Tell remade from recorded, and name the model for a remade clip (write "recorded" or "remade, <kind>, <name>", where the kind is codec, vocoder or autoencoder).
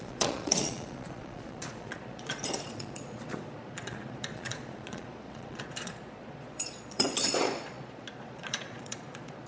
remade, vocoder, Vocos